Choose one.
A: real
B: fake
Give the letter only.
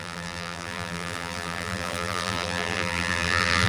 B